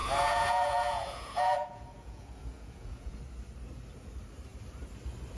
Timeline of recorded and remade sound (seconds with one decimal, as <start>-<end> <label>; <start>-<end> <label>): 0.0-3.2 remade; 3.2-5.4 recorded